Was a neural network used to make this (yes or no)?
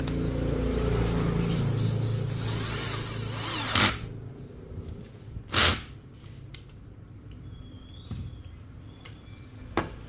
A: no